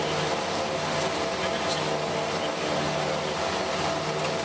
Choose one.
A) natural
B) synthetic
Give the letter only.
A